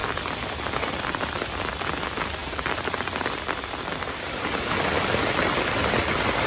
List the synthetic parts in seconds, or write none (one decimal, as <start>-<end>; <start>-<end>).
0.0-0.5; 2.4-6.5